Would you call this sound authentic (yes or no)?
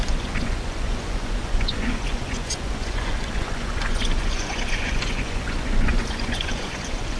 no